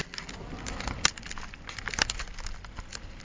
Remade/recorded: recorded